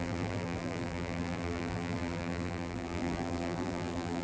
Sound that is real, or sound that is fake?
fake